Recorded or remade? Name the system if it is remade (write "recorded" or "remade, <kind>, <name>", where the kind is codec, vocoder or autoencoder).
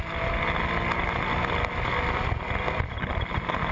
recorded